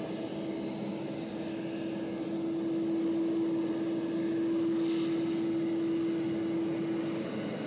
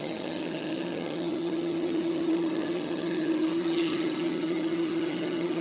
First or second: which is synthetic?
second